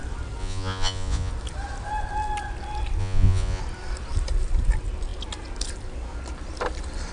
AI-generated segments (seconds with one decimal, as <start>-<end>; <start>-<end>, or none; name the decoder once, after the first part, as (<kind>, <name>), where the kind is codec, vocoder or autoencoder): 0.4-1.3 (vocoder, Vocos); 3.0-3.6